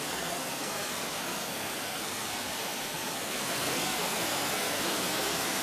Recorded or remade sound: remade